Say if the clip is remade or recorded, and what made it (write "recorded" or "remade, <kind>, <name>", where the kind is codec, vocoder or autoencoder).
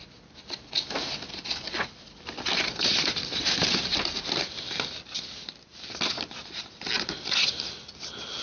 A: recorded